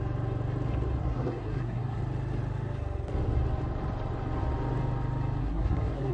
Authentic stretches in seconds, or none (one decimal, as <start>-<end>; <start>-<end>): 0.0-1.0; 2.0-5.4